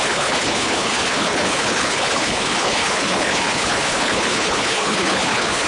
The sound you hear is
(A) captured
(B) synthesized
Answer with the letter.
B